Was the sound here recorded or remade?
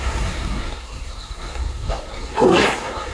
remade